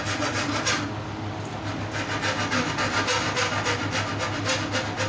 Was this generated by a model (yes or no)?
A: no